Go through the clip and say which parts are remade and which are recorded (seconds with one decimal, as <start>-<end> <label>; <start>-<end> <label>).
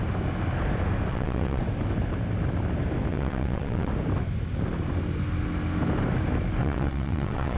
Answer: 0.0-1.1 recorded; 1.1-1.6 remade; 1.6-3.1 recorded; 3.1-3.9 remade; 3.9-6.6 recorded; 6.6-7.6 remade